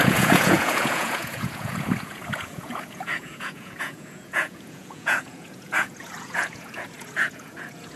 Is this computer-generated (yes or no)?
yes